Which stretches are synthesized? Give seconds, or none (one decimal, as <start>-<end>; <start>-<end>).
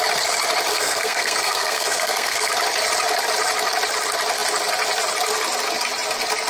0.7-2.5